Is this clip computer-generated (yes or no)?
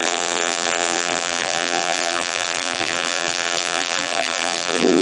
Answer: yes